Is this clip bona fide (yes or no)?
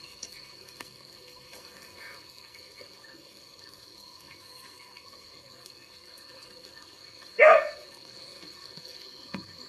no